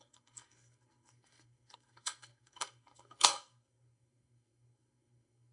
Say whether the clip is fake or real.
fake